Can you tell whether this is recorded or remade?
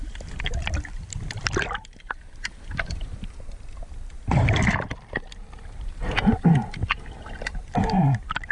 remade